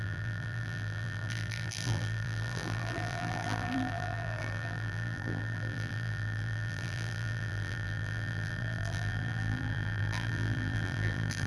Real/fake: fake